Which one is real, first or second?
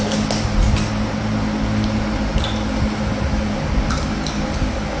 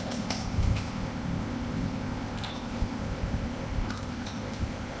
first